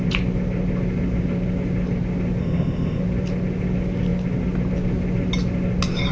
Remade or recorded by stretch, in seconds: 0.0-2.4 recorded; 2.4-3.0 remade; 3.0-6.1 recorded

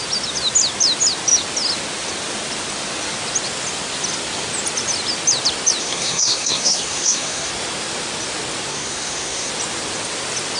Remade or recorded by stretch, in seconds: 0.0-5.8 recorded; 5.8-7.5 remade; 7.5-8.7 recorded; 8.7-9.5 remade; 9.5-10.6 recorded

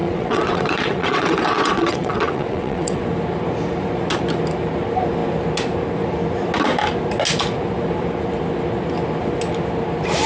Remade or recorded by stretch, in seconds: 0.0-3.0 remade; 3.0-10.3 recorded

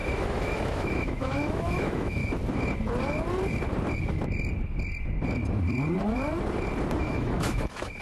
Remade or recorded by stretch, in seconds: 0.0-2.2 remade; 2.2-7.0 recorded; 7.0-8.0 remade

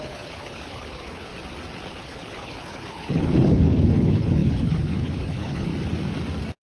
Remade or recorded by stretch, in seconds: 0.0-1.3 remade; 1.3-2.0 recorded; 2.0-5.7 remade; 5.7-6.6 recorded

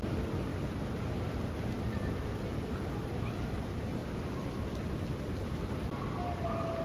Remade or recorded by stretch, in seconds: 0.0-6.8 recorded